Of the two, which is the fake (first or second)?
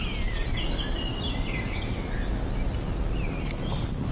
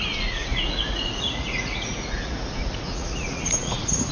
second